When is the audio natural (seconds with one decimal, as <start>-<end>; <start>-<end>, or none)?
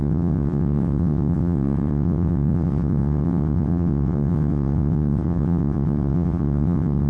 none